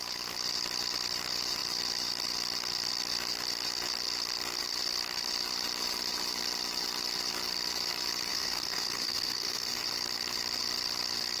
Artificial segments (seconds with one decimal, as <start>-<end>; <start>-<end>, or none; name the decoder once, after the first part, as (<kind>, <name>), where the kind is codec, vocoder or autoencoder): 8.3-9.8 (codec, SNAC)